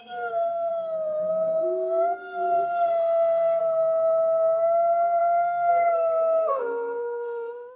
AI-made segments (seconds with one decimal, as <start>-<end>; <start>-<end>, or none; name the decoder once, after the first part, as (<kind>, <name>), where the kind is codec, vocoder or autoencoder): 0.0-0.7 (codec, SNAC); 1.3-3.6; 5.2-7.8